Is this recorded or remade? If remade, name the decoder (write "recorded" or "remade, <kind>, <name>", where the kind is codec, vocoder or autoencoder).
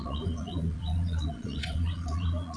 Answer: remade, vocoder, Vocos